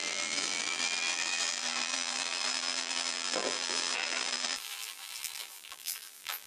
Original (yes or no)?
no